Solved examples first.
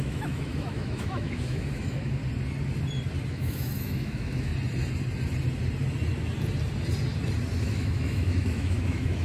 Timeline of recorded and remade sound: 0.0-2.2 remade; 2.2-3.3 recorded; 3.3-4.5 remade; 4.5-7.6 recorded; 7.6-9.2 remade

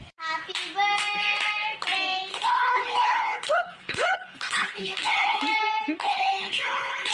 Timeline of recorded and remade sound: 0.0-2.3 recorded; 2.3-5.4 remade; 5.4-6.0 recorded; 6.0-7.1 remade

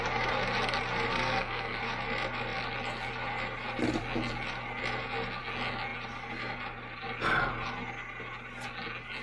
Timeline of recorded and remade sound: 0.0-1.1 recorded; 1.1-1.8 remade; 1.8-9.2 recorded

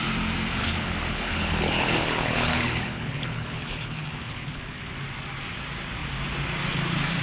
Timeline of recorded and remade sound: 0.0-0.6 recorded; 0.6-4.9 remade; 4.9-7.2 recorded

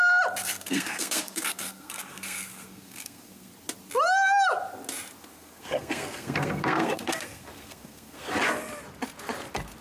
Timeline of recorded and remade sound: 0.0-0.4 recorded; 0.4-3.5 remade; 3.5-5.3 recorded; 5.3-8.3 remade; 8.3-9.8 recorded

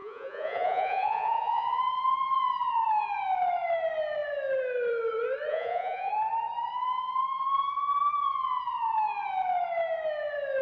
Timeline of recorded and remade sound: 0.0-1.8 remade; 1.8-5.5 recorded; 5.5-6.1 remade; 6.1-10.6 recorded

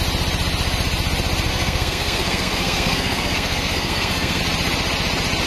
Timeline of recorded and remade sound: 0.0-1.5 recorded; 1.5-4.4 remade; 4.4-5.5 recorded

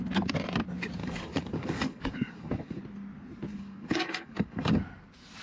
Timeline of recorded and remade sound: 0.0-1.0 recorded; 1.0-2.8 remade; 2.8-3.5 recorded; 3.5-4.8 remade; 4.8-5.4 recorded